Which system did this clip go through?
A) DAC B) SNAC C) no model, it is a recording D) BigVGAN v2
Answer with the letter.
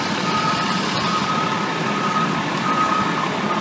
C